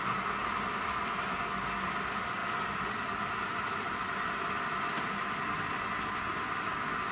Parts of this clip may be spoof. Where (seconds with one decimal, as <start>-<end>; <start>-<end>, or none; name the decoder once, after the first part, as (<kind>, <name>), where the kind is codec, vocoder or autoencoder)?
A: 2.4-7.1 (vocoder, BigVGAN v2)

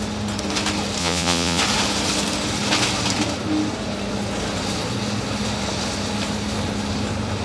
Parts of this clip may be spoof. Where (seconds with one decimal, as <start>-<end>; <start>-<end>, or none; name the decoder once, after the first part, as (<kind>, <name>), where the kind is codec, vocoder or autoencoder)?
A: 1.0-1.6 (vocoder, Vocos)

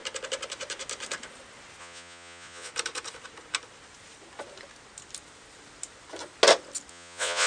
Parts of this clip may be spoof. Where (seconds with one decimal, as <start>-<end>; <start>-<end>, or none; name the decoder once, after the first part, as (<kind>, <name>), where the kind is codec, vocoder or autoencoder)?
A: 1.8-2.7 (vocoder, Vocos); 6.9-7.5

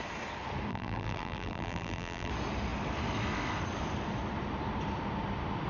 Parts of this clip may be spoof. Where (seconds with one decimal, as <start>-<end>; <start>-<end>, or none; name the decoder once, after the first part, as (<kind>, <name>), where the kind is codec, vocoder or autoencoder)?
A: 0.7-2.3 (vocoder, BigVGAN v2)

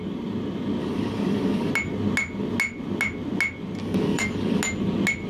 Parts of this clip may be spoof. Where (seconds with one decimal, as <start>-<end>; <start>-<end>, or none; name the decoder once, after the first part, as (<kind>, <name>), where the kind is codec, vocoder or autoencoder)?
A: 0.8-1.7 (codec, DAC); 3.8-4.6